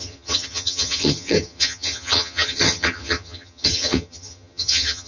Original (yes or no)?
no